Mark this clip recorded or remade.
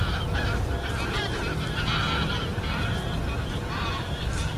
remade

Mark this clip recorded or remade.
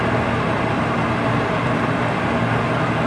recorded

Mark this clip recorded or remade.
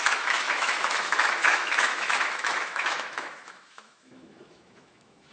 remade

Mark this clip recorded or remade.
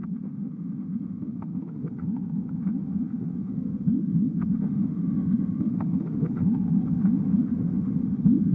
remade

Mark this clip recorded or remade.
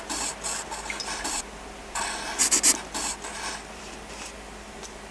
recorded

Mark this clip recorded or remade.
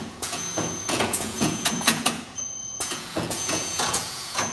remade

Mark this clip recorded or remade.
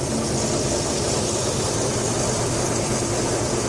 recorded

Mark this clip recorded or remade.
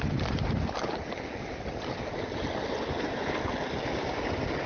recorded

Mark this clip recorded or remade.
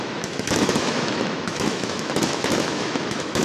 remade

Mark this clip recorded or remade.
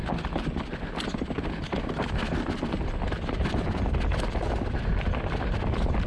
recorded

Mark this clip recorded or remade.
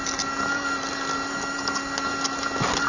recorded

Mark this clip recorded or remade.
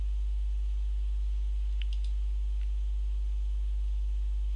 recorded